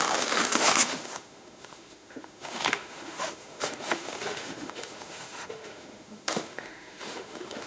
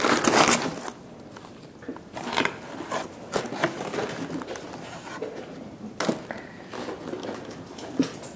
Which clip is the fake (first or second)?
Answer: first